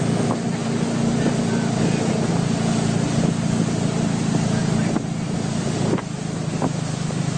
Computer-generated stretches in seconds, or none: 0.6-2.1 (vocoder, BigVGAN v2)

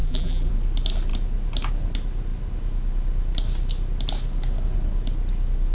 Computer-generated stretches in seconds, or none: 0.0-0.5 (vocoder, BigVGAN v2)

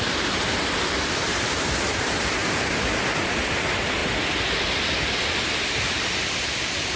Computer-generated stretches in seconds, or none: none

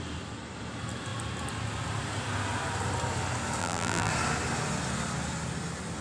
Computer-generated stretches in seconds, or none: 3.6-4.1 (vocoder, BigVGAN v2)

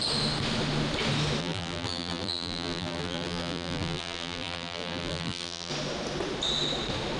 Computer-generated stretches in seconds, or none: 1.4-5.7 (vocoder, BigVGAN v2)

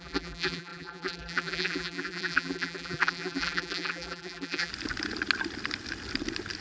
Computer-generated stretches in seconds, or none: 0.0-4.7 (vocoder, BigVGAN v2)